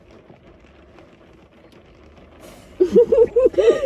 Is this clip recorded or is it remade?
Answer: recorded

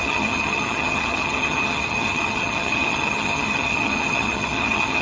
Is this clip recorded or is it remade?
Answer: remade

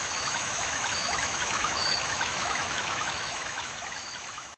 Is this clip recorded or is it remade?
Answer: remade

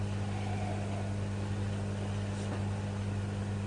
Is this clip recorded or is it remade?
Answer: recorded